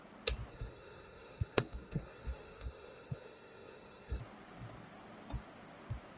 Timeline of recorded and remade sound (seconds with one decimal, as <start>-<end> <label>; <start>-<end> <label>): 0.0-0.5 recorded; 0.5-4.2 remade; 4.2-6.2 recorded